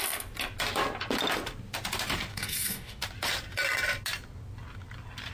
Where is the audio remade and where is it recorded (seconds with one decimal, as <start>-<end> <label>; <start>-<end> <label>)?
0.0-2.3 recorded; 2.3-3.0 remade; 3.0-5.3 recorded